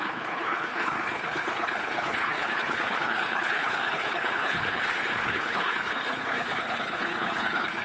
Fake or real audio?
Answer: fake